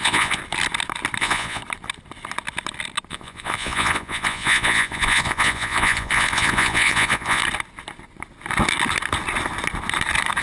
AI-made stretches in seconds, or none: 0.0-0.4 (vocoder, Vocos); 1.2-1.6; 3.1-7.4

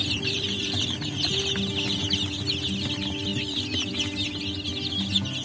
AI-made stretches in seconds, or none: 0.0-1.4 (vocoder, BigVGAN v2); 3.3-3.9

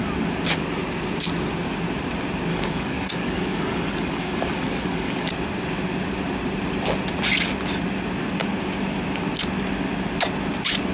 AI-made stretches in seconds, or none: 2.5-5.3 (codec, DAC)